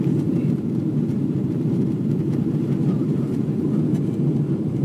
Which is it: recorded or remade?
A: remade